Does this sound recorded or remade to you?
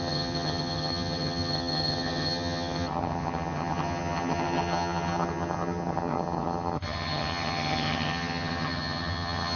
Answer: remade